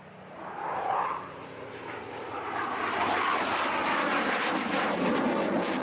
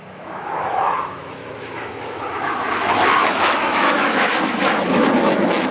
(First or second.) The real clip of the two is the first